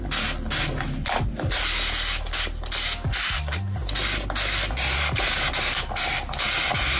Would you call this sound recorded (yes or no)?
yes